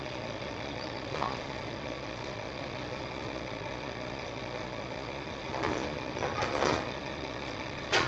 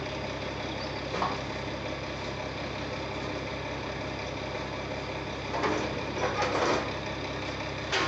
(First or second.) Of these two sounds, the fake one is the first